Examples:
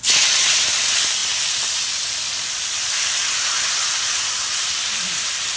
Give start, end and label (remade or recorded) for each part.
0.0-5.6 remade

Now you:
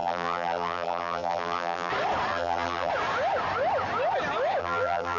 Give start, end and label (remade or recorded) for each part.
0.0-1.9 remade; 1.9-2.3 recorded; 2.3-2.9 remade; 2.9-4.6 recorded; 4.6-5.2 remade